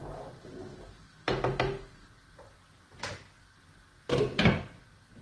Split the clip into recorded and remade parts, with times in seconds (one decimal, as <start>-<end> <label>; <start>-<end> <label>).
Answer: 0.0-5.2 recorded